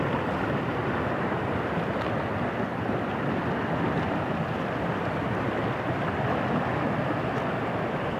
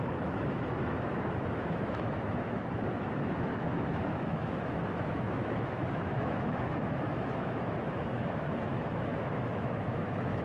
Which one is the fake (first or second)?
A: second